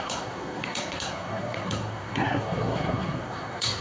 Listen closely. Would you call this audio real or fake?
fake